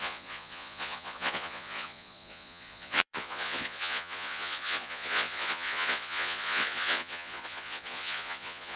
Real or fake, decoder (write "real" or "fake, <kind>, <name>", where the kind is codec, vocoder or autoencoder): fake, vocoder, Vocos